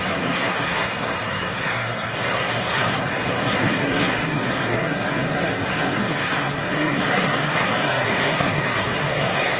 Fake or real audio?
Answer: fake